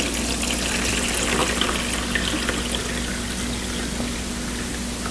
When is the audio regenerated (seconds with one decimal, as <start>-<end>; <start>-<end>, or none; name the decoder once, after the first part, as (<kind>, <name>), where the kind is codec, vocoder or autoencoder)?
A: none